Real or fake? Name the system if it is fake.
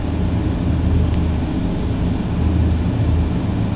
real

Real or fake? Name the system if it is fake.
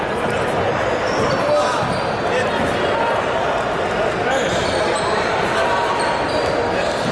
real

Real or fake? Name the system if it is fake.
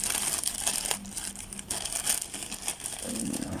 real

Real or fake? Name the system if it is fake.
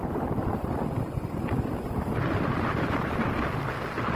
real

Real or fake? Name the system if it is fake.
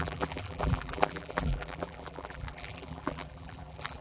fake, vocoder, BigVGAN v2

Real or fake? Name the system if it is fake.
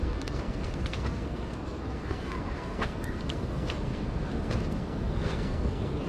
fake, codec, SNAC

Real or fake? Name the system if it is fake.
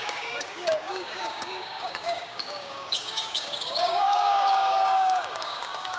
fake, codec, DAC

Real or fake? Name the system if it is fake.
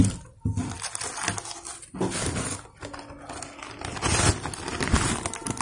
real